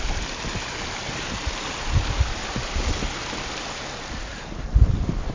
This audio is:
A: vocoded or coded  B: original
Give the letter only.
B